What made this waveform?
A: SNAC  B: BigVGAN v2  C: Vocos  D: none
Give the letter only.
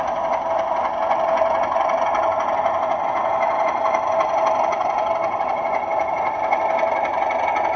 D